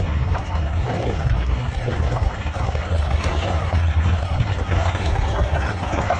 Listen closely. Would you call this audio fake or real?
fake